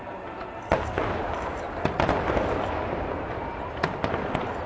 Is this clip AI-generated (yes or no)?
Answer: no